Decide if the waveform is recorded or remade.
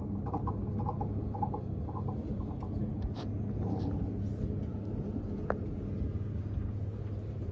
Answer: recorded